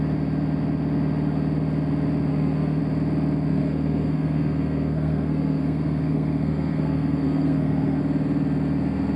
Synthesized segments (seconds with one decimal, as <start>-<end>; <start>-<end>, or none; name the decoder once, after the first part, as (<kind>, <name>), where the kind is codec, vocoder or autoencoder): 2.3-2.8 (codec, SNAC); 3.5-8.0